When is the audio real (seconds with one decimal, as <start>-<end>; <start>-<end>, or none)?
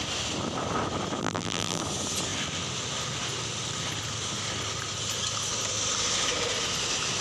0.0-1.2; 1.8-7.2